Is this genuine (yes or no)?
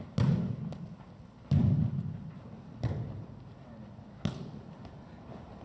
yes